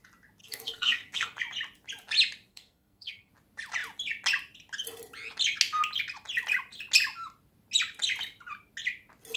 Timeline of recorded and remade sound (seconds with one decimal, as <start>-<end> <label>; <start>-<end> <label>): 0.0-0.4 recorded; 0.4-1.4 remade; 1.4-2.5 recorded; 2.5-3.3 remade; 3.3-9.4 recorded